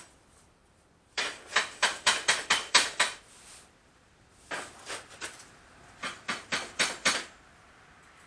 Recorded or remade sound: remade